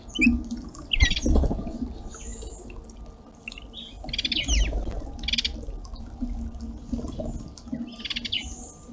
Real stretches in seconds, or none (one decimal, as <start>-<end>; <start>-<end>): 0.0-8.9